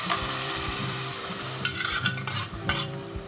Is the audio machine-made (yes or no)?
yes